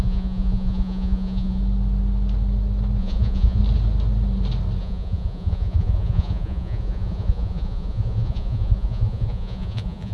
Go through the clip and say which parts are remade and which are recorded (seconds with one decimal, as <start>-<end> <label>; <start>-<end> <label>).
0.0-1.6 remade; 1.6-3.0 recorded; 3.0-3.6 remade; 3.6-4.8 recorded; 4.8-10.1 remade